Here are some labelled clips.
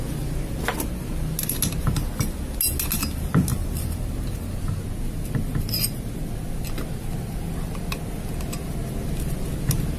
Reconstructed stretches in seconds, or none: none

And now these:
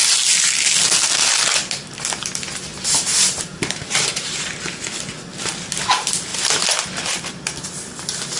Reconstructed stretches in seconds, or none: 2.7-4.1 (vocoder, BigVGAN v2); 6.3-6.8